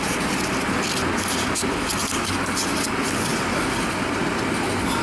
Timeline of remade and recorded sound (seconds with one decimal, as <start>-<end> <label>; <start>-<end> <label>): 0.0-5.0 recorded